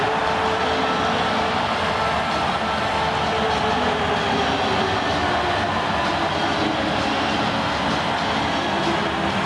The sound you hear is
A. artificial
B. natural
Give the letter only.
B